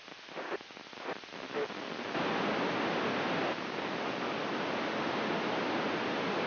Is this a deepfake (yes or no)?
no